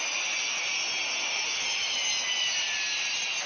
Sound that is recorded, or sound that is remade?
recorded